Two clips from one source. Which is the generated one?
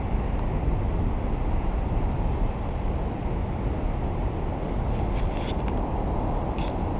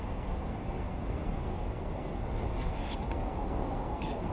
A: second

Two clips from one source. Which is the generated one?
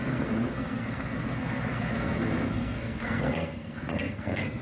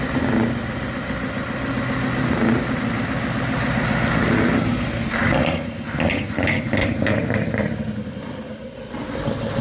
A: first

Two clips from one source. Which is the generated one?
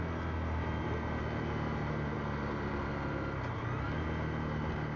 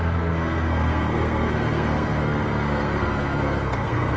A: second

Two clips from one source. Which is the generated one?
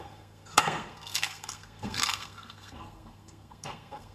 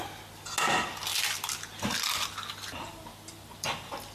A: first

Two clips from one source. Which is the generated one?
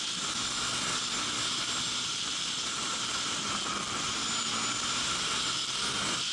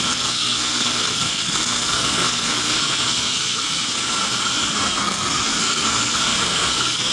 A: second